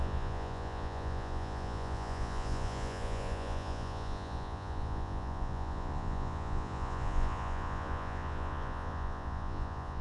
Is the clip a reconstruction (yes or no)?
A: yes